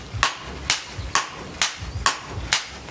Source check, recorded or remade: recorded